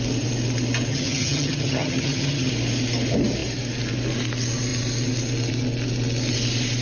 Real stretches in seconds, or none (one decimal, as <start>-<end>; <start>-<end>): 0.0-0.9; 2.5-6.8